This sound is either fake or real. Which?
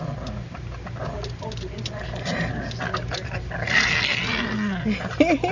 real